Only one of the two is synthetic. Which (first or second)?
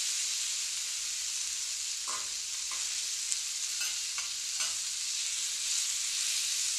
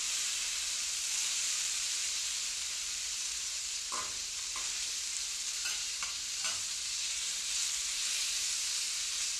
second